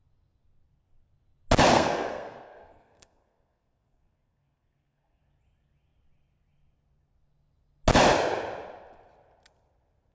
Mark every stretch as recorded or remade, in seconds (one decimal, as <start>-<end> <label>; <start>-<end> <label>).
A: 0.0-1.7 recorded; 1.7-5.2 remade; 5.2-10.1 recorded